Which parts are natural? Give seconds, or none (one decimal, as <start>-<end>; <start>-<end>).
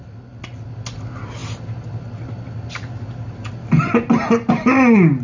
0.0-5.2